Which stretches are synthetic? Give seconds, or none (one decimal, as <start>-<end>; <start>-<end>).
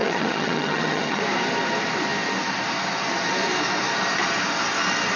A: 0.0-1.2